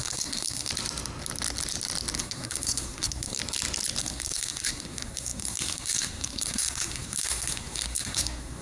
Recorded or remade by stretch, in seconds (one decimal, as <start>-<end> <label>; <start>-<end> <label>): 0.0-0.7 remade; 0.7-2.2 recorded; 2.2-3.4 remade; 3.4-4.0 recorded; 4.0-8.6 remade